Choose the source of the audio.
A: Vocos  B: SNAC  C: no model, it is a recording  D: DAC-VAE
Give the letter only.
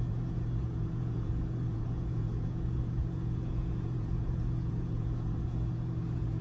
A